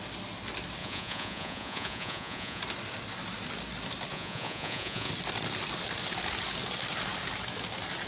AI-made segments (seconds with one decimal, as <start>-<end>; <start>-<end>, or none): 0.8-2.6; 4.1-5.1